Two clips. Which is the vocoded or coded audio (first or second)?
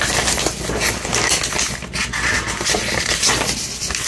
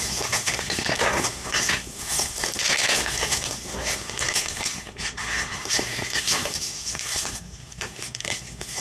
second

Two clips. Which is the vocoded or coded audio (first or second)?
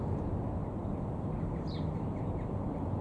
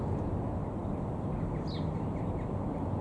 first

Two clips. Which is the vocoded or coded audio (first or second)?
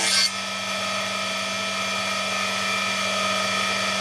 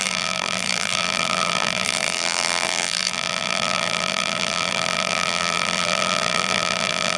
second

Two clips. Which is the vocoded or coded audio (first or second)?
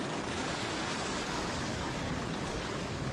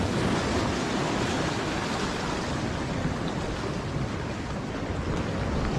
first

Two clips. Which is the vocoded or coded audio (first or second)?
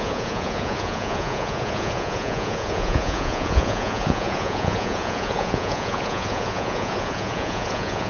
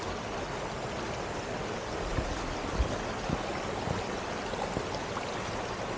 first